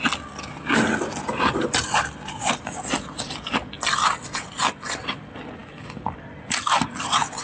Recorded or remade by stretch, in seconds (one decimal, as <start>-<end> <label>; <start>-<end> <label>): 0.0-7.4 recorded